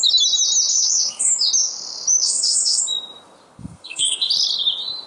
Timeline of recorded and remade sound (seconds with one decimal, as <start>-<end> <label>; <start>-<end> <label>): 0.0-0.7 recorded; 0.7-1.3 remade; 1.3-2.2 recorded; 2.2-2.8 remade; 2.8-3.6 recorded; 3.6-4.3 remade; 4.3-5.1 recorded

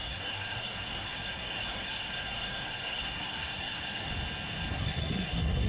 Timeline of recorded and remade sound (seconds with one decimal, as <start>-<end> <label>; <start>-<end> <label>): 0.0-4.1 remade; 4.1-4.7 recorded; 4.7-5.7 remade

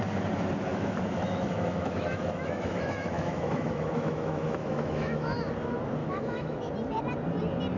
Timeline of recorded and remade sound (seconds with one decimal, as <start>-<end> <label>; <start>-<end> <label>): 0.0-0.7 recorded; 0.7-5.4 remade; 5.4-6.0 recorded; 6.0-6.7 remade; 6.7-7.8 recorded

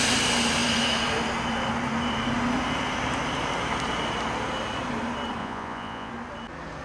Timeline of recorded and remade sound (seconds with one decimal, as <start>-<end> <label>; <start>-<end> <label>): 0.0-5.4 recorded; 5.4-6.1 remade; 6.1-6.8 recorded

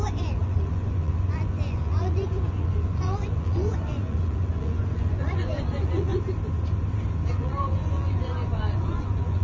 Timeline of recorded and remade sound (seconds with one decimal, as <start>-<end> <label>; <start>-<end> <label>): 0.0-6.1 remade; 6.1-7.3 recorded; 7.3-9.4 remade

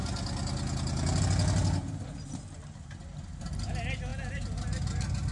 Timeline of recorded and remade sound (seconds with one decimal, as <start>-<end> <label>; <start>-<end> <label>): 0.0-5.3 recorded

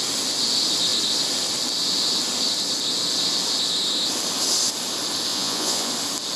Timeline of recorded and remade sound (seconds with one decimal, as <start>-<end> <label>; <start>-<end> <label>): 0.0-5.3 recorded; 5.3-5.9 remade; 5.9-6.4 recorded

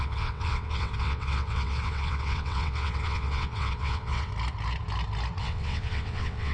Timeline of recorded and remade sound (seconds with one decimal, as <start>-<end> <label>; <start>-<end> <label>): 0.0-4.3 remade; 4.3-5.4 recorded; 5.4-6.5 remade